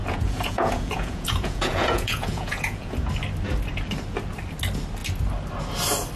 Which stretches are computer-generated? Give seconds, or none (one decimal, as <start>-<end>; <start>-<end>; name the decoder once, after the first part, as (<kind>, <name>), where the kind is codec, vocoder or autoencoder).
0.0-3.1 (vocoder, Vocos)